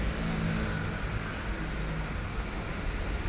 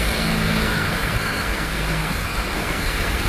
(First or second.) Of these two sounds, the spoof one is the second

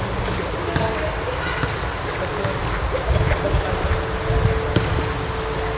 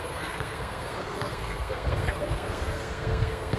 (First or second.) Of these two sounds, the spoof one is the second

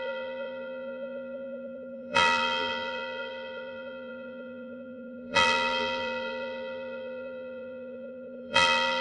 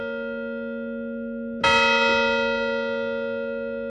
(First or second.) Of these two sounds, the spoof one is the first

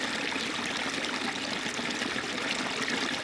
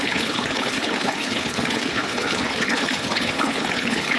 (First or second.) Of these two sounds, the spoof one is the second